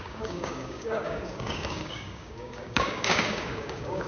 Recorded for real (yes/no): no